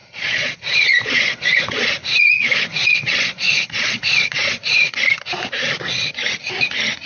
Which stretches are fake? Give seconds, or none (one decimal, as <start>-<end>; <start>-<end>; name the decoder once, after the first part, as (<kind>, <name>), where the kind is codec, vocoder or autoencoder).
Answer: 0.0-1.8 (vocoder, Vocos); 2.2-5.0